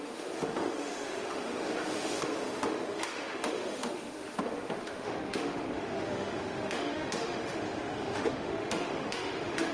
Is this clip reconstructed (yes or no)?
yes